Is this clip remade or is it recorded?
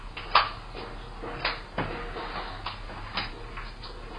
recorded